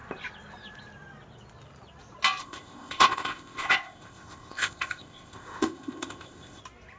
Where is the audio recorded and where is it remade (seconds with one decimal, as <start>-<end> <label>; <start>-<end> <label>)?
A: 0.0-2.4 recorded; 2.4-6.6 remade; 6.6-7.0 recorded